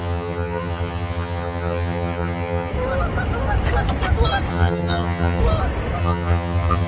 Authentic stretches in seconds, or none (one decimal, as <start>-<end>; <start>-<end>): 2.7-4.5; 5.4-6.0